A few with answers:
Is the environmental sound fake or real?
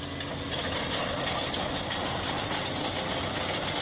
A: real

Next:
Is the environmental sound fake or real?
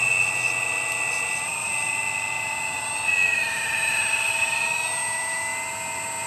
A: real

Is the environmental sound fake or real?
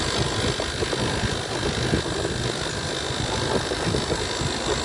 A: real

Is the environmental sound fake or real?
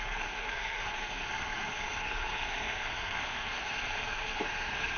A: fake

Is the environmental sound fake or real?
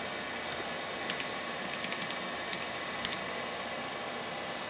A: real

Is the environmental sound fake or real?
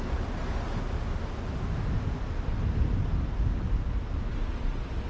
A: real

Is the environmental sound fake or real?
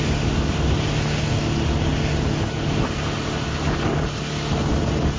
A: real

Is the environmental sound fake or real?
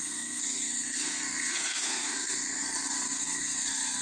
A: fake